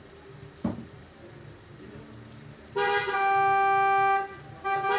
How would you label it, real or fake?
real